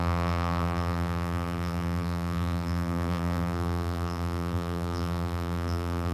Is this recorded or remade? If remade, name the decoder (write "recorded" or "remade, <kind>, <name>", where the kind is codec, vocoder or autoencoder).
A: remade, vocoder, BigVGAN v2